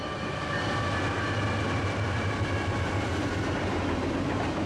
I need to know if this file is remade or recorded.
recorded